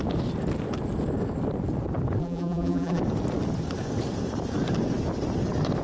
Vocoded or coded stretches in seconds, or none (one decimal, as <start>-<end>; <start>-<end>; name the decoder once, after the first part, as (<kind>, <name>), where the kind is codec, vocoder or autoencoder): 2.2-3.0 (vocoder, BigVGAN v2)